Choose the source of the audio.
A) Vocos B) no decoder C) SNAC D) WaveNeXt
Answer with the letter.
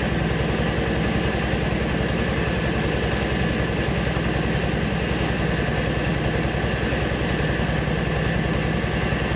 B